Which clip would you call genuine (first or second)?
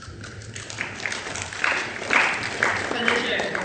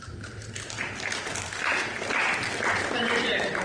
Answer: second